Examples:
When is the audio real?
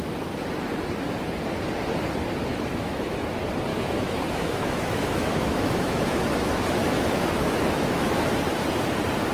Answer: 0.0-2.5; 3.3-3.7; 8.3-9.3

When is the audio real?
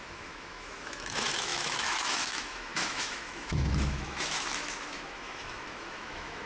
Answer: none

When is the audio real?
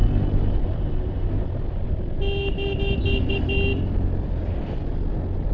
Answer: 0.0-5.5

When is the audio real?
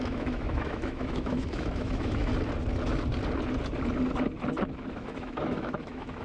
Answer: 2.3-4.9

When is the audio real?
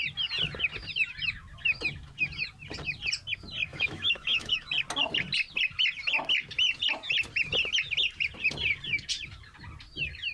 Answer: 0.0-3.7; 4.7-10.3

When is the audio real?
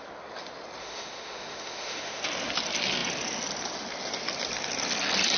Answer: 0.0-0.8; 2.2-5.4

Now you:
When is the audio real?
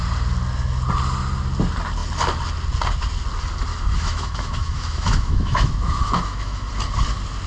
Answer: 0.0-3.7; 6.7-7.5